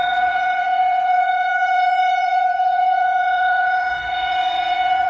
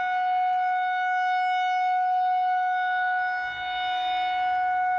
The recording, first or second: second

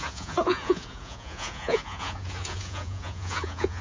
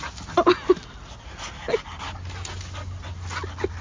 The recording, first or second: second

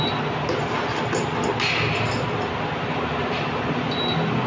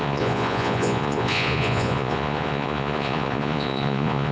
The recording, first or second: first